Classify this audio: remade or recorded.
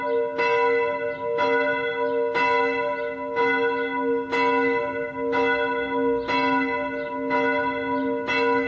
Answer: recorded